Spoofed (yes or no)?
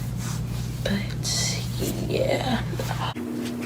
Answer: no